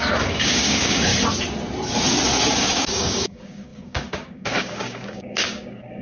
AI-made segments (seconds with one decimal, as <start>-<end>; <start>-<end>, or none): 0.0-1.1; 2.5-6.0